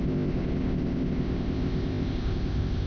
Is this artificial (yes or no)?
yes